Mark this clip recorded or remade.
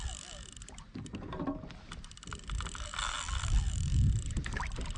recorded